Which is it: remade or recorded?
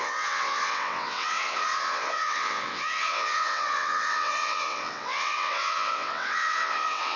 remade